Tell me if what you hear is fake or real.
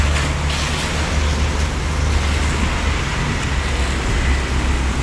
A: real